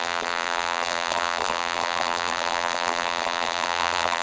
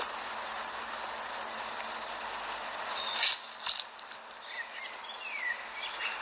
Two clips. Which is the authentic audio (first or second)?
second